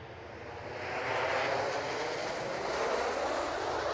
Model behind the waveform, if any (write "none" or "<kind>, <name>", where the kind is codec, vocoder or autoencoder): none